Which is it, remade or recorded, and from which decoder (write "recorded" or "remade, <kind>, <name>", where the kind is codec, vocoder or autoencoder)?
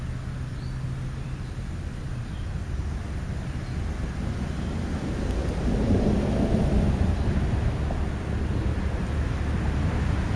recorded